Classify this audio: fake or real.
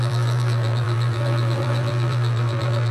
fake